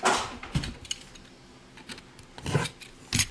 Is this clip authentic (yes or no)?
yes